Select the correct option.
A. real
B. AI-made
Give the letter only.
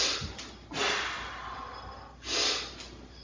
A